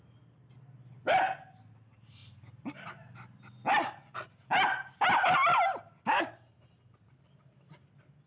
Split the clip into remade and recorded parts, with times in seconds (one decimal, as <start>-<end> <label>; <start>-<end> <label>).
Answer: 0.0-8.3 recorded